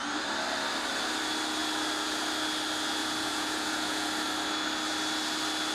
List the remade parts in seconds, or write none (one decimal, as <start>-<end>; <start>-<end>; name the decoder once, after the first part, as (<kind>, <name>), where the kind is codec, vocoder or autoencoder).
3.0-4.1 (vocoder, Vocos)